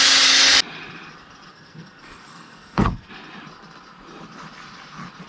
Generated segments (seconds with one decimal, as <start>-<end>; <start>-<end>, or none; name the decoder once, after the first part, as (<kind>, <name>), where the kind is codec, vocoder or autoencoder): 1.5-3.1 (codec, SNAC)